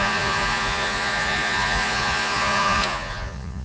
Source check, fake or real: fake